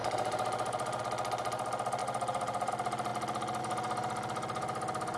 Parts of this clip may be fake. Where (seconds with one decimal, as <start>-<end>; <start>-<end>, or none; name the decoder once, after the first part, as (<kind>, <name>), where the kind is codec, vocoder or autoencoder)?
0.0-1.0 (vocoder, BigVGAN v2); 2.0-2.7